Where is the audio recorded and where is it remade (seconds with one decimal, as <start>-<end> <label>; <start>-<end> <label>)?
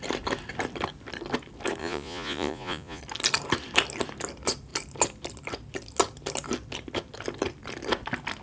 0.0-1.8 recorded; 1.8-3.0 remade; 3.0-8.4 recorded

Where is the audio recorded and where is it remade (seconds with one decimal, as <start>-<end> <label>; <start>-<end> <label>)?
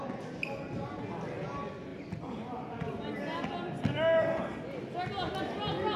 0.0-6.0 recorded